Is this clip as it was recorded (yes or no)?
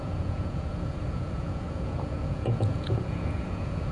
no